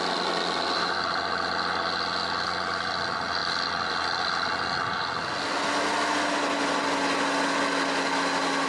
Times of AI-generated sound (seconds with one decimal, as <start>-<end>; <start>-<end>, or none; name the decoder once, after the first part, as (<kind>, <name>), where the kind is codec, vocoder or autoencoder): none